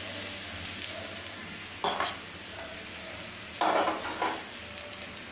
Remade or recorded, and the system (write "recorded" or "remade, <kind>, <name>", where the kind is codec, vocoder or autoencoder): recorded